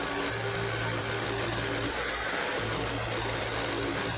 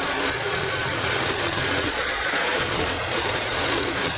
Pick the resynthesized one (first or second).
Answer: second